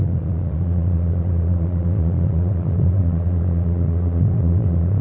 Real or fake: fake